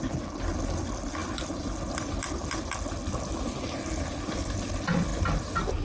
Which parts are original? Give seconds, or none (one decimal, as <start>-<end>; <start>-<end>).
0.0-5.8